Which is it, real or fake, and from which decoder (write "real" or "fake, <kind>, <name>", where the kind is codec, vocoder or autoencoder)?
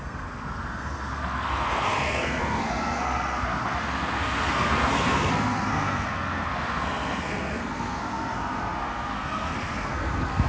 fake, codec, SNAC